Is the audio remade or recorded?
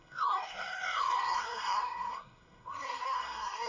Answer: remade